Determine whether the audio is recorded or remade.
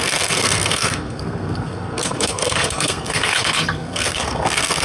remade